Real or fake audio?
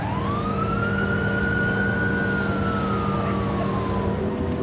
real